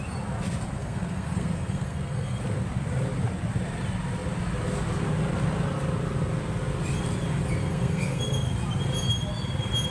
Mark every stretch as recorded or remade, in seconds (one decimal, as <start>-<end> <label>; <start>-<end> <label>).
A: 0.0-0.8 recorded; 0.8-2.4 remade; 2.4-7.6 recorded; 7.6-8.2 remade; 8.2-9.9 recorded